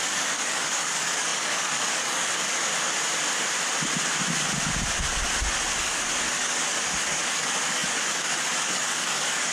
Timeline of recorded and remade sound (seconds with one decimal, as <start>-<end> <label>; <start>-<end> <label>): 0.0-2.7 remade; 2.7-5.8 recorded; 5.8-9.5 remade